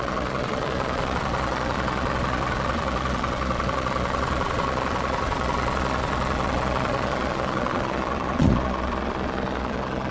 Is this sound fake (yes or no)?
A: yes